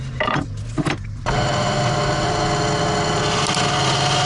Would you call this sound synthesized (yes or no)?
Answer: no